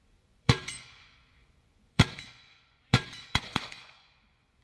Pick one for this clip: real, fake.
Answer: fake